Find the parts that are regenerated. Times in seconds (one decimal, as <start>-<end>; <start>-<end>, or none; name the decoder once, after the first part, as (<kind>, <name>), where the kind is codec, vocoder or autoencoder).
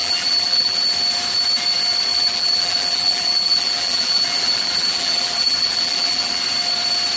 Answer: 0.0-0.8 (vocoder, BigVGAN v2); 2.1-6.4